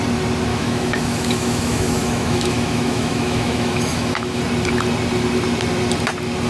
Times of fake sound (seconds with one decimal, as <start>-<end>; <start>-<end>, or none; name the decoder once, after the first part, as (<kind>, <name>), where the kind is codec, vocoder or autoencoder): 0.5-4.4 (autoencoder, DAC-VAE)